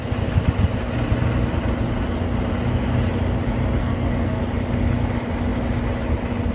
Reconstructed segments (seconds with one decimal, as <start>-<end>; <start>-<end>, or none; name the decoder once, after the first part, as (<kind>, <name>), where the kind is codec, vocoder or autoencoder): 3.8-4.4 (codec, SNAC)